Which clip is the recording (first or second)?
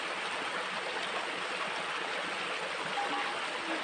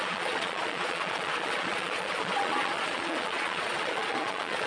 first